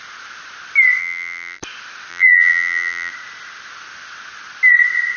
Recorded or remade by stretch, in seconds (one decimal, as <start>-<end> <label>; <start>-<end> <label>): 0.0-1.0 recorded; 1.0-1.6 remade; 1.6-2.1 recorded; 2.1-3.1 remade; 3.1-5.2 recorded